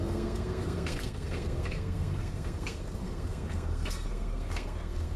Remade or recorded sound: remade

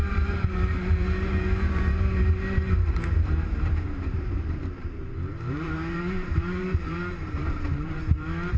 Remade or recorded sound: remade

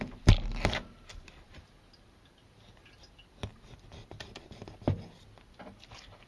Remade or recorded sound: recorded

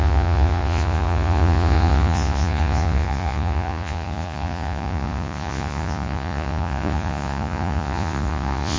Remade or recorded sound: remade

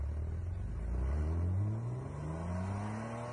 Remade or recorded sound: recorded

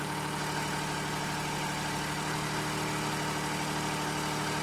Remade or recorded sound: recorded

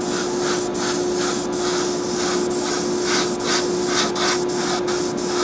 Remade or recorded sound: recorded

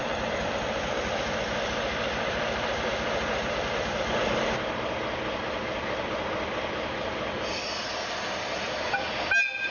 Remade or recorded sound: recorded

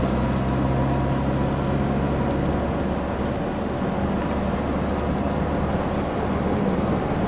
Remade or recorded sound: recorded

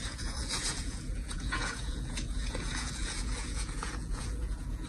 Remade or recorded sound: remade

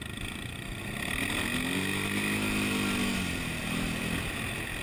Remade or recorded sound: recorded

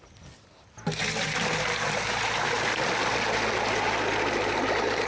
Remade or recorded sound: recorded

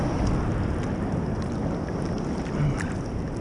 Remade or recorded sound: recorded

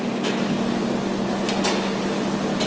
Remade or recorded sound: recorded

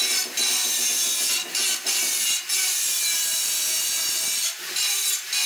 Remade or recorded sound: recorded